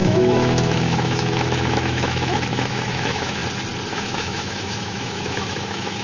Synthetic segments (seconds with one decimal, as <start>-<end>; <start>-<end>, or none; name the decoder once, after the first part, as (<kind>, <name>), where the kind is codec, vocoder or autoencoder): 0.0-3.4 (autoencoder, DAC-VAE); 3.9-6.0